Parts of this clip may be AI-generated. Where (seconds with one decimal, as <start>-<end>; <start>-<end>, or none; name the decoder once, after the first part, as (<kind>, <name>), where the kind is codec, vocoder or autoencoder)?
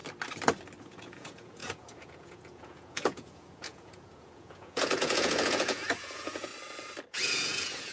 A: 0.8-6.5 (vocoder, Vocos); 7.1-7.9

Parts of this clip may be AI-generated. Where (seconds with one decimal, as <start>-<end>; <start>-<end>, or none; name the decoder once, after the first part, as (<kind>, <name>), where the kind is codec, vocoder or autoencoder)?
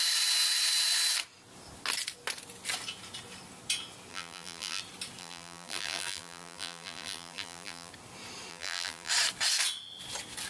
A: 4.1-4.8 (vocoder, BigVGAN v2); 5.2-7.9; 8.5-9.1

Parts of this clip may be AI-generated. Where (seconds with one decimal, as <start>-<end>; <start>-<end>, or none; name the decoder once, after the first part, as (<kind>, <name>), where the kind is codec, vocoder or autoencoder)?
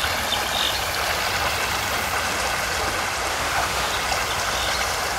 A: 3.3-3.9 (autoencoder, DAC-VAE)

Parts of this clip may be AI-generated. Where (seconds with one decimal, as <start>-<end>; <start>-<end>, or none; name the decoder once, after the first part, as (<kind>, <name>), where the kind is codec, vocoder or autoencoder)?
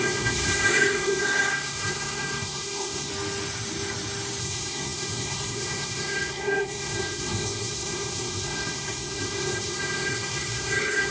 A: 0.0-3.1 (codec, SNAC); 4.4-11.1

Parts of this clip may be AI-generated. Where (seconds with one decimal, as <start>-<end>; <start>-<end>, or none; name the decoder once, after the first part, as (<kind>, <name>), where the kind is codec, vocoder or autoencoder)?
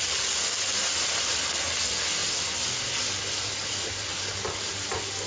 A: none